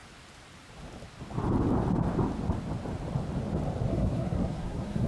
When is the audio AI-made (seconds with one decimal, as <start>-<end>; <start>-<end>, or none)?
3.9-5.1